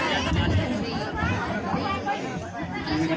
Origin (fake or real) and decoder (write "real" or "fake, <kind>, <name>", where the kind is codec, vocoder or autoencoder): real